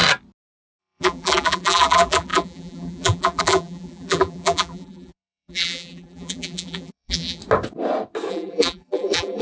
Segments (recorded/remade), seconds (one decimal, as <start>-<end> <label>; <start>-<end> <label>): 0.0-0.8 recorded; 0.8-7.4 remade; 7.4-8.3 recorded; 8.3-9.4 remade